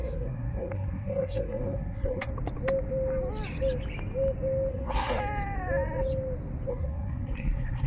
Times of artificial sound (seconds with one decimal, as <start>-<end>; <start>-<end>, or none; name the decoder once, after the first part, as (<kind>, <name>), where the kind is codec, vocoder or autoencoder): 0.0-2.3 (codec, SNAC); 4.7-5.2; 6.7-7.9